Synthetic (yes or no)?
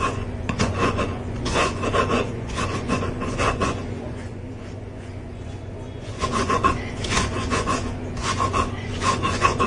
yes